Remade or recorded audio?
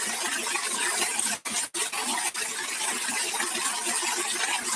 recorded